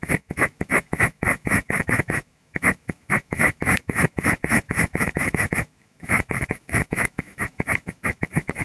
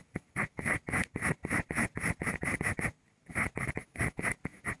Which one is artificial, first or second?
first